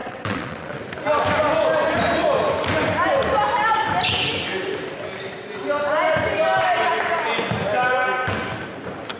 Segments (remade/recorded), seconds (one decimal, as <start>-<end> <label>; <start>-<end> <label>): 0.0-0.8 remade; 0.8-9.2 recorded

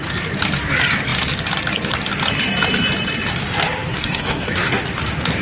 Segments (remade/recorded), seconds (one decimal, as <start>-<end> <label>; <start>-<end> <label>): 0.0-3.9 recorded; 3.9-4.8 remade; 4.8-5.4 recorded

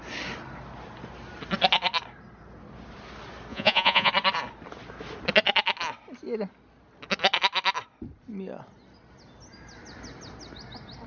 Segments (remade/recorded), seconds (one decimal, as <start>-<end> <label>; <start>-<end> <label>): 0.0-3.5 recorded; 3.5-4.1 remade; 4.1-11.1 recorded

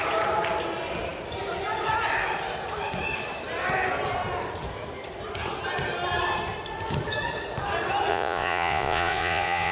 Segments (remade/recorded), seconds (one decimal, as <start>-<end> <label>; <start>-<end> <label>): 0.0-8.1 recorded; 8.1-9.7 remade

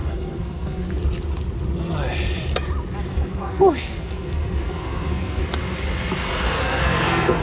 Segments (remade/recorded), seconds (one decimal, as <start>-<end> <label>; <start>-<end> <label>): 0.0-0.9 remade; 0.9-3.1 recorded; 3.1-5.4 remade; 5.4-6.6 recorded; 6.6-7.4 remade